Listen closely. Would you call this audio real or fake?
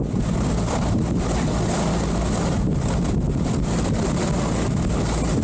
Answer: real